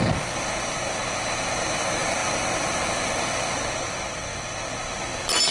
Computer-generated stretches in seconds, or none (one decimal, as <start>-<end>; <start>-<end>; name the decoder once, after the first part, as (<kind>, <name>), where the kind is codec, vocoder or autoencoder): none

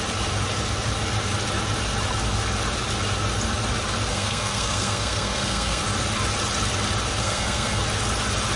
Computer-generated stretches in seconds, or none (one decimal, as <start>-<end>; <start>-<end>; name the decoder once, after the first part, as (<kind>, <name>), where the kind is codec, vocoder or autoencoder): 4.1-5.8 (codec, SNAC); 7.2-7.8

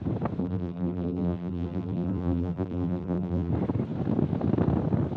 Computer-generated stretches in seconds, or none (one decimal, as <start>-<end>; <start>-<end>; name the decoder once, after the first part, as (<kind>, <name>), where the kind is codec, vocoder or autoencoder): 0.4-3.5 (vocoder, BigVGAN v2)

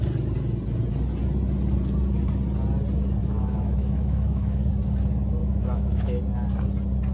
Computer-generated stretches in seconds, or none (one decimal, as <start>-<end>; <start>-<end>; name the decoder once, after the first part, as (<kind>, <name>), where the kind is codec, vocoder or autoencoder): 3.2-4.7 (autoencoder, DAC-VAE); 5.4-6.2